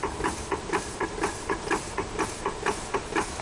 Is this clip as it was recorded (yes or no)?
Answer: yes